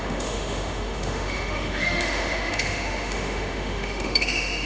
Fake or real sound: fake